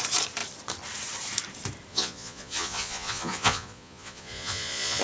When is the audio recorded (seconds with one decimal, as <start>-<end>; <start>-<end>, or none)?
0.0-1.9